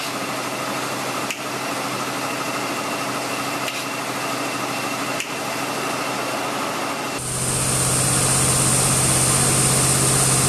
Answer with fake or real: real